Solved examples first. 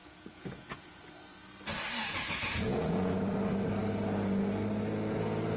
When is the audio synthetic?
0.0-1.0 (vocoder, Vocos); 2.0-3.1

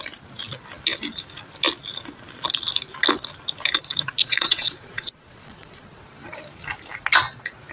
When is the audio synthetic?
4.2-6.0 (vocoder, Vocos)

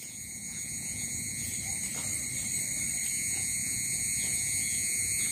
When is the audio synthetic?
0.0-1.5 (vocoder, Vocos); 3.1-5.3

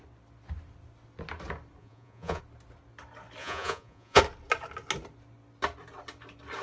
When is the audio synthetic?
1.8-2.4 (vocoder, Vocos); 3.4-4.2

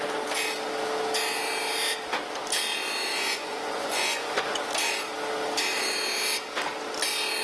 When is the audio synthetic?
3.1-4.6 (vocoder, Vocos)